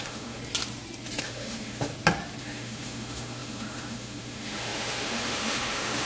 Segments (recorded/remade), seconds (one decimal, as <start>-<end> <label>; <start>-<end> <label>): 0.0-0.4 remade; 0.4-1.2 recorded; 1.2-1.9 remade; 1.9-2.4 recorded; 2.4-6.1 remade